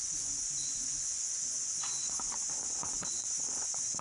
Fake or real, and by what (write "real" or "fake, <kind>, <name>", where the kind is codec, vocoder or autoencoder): fake, vocoder, Vocos